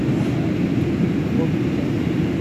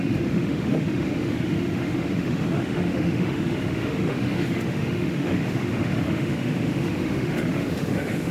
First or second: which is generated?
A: second